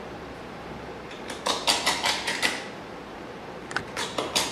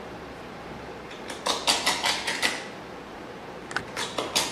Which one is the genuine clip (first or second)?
second